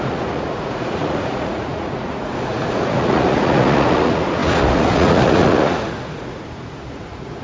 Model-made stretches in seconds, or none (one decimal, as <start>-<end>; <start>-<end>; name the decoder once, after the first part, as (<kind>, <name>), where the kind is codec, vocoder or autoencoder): 0.0-7.4 (vocoder, Vocos)

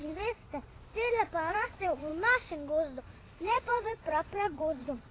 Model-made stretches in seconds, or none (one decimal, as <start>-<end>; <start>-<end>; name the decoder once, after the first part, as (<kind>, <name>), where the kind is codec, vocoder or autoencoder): 0.0-0.4 (vocoder, Vocos); 1.5-2.1; 3.0-5.1

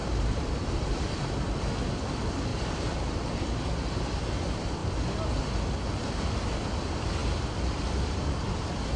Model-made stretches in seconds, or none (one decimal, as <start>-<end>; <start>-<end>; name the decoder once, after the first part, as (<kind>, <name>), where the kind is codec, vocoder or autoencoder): 0.0-1.3 (vocoder, BigVGAN v2); 2.5-3.6

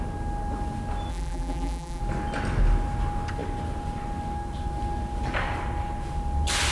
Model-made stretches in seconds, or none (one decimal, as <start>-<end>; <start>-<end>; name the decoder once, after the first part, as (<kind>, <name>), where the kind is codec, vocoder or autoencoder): 1.1-2.0 (vocoder, BigVGAN v2)

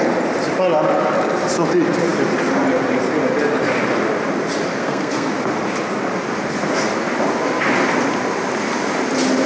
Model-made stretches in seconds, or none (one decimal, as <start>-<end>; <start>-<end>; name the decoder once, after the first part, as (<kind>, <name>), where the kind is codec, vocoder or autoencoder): 4.8-5.3 (codec, SNAC)

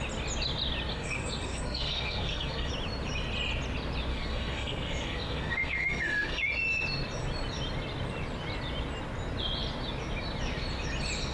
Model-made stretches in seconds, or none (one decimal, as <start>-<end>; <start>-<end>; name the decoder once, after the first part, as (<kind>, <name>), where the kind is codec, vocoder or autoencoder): 0.9-2.7 (codec, SNAC); 4.1-6.4

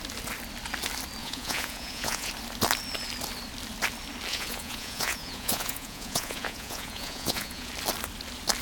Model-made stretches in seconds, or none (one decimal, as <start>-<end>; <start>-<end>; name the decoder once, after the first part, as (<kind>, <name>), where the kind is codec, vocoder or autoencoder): 1.2-2.3 (vocoder, Vocos); 4.3-7.7